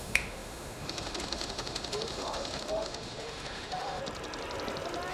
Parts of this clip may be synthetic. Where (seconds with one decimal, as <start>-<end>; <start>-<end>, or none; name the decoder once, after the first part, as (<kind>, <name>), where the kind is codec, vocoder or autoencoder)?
0.0-4.0 (autoencoder, DAC-VAE)